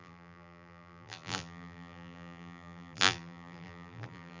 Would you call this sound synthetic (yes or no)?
yes